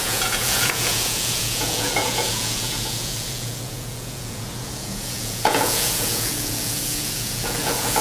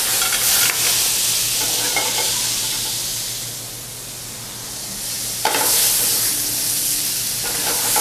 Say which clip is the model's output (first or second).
first